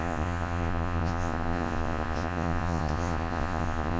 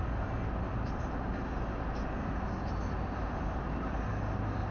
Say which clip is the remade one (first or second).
first